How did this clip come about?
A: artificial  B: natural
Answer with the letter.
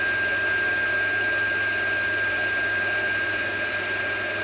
B